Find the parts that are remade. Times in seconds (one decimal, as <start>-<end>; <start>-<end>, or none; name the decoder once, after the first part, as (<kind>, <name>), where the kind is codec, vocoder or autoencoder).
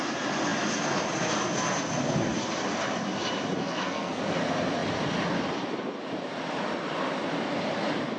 3.6-4.2 (codec, SNAC)